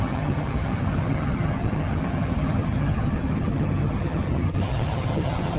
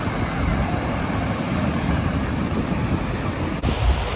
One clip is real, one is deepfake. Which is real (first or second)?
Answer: second